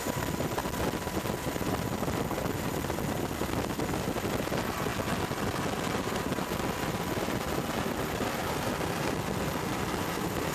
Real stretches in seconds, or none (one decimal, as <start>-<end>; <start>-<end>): 0.0-10.5